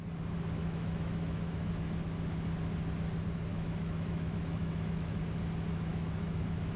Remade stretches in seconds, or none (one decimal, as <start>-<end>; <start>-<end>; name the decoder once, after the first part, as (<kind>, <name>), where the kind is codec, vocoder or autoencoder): 0.6-1.7 (autoencoder, DAC-VAE); 3.5-5.2; 5.9-6.8